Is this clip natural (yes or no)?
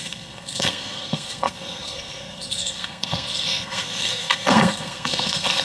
no